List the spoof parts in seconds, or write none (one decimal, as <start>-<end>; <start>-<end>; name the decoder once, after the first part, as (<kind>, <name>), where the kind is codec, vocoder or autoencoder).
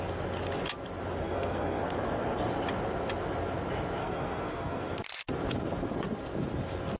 1.2-1.8 (codec, SNAC); 4.0-4.9